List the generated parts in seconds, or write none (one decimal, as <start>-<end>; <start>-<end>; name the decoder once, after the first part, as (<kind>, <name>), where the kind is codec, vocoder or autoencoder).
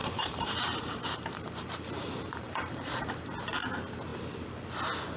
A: 0.0-3.1 (vocoder, BigVGAN v2)